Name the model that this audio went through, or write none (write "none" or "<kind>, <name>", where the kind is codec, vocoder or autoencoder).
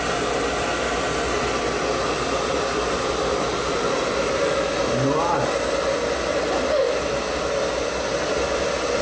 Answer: none